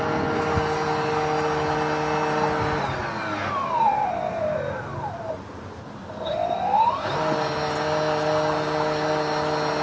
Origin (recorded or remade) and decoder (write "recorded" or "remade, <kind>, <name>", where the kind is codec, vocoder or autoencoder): recorded